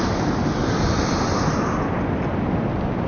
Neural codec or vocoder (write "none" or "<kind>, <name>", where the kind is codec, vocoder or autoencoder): none